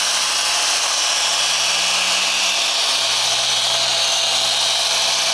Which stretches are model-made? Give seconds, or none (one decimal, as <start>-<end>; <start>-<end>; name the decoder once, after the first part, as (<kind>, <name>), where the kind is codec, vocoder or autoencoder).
none